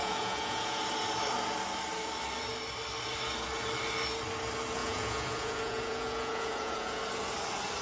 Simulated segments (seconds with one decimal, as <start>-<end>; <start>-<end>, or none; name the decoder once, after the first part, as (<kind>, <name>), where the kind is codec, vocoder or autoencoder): 0.0-0.8 (vocoder, Vocos); 4.8-7.0